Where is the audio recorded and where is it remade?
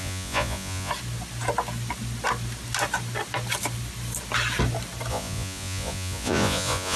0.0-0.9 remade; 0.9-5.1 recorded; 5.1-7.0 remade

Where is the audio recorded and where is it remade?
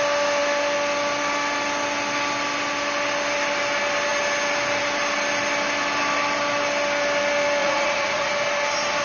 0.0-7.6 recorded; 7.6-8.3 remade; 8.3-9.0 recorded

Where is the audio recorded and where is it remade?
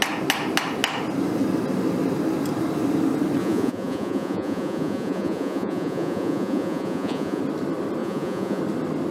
0.0-3.4 recorded; 3.4-7.4 remade; 7.4-8.0 recorded; 8.0-8.6 remade; 8.6-9.1 recorded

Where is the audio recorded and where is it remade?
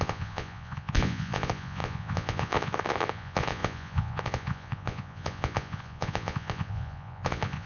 0.0-7.7 remade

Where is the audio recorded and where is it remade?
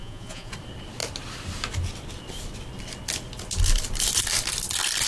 0.0-0.5 remade; 0.5-5.1 recorded